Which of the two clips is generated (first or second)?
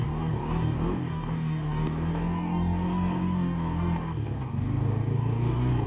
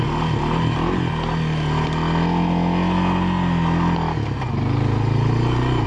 first